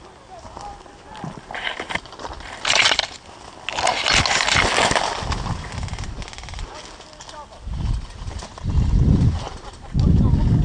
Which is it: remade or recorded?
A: recorded